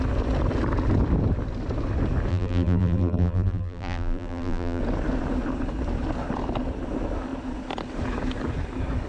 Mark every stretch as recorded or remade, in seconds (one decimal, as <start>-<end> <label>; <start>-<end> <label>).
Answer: 0.0-2.3 recorded; 2.3-4.8 remade; 4.8-9.1 recorded